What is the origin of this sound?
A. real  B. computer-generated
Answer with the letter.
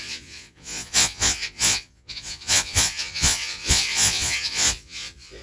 B